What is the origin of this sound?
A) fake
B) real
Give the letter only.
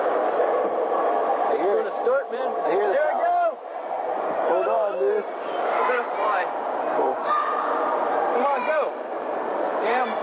A